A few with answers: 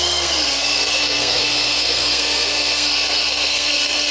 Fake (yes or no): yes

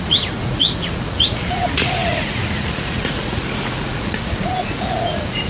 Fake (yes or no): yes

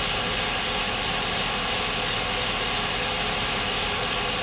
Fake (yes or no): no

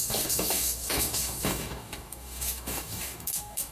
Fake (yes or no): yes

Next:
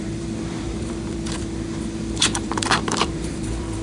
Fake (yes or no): yes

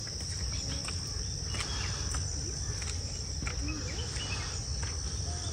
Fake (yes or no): no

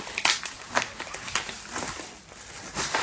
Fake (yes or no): no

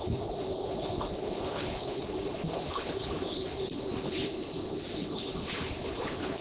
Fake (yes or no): yes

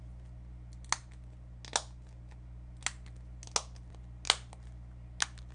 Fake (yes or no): no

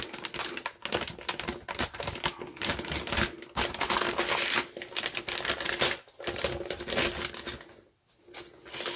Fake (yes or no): no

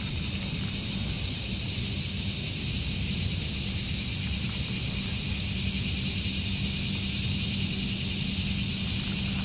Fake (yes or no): no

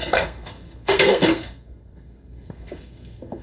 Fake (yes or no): yes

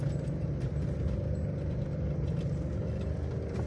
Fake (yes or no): no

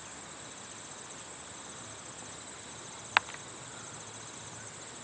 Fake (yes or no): no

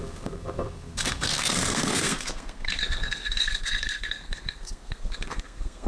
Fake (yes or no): yes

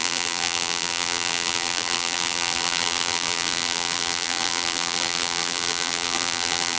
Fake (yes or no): yes